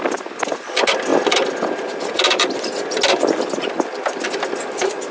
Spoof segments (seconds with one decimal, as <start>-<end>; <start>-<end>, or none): none

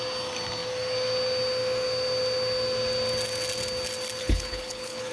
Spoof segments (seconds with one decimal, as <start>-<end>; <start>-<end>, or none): 4.2-5.1

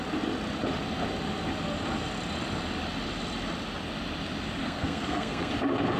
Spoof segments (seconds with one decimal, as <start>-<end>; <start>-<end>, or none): 4.6-5.5